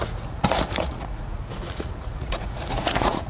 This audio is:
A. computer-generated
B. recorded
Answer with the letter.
A